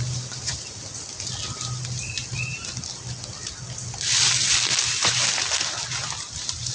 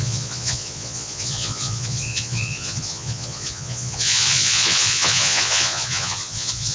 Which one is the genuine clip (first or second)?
first